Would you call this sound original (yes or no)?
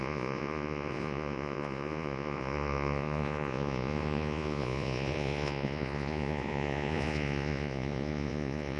no